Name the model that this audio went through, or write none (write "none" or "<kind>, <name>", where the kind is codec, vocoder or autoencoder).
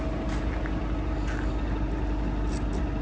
none